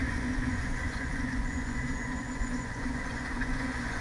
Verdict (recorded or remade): remade